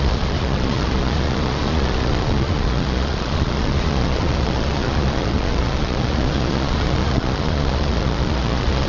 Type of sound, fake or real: fake